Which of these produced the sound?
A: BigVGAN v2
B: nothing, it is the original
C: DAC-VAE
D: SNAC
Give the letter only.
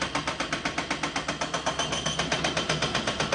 B